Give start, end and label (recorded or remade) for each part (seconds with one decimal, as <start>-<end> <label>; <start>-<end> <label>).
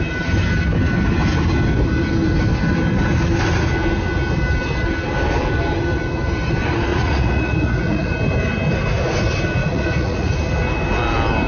0.0-6.9 recorded; 6.9-8.1 remade; 8.1-9.6 recorded; 9.6-10.3 remade; 10.3-11.5 recorded